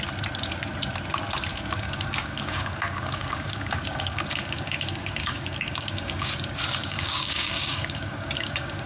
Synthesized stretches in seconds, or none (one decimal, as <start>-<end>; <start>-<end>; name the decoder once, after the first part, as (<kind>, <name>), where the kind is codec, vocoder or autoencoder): 1.5-6.3 (codec, DAC); 6.8-8.9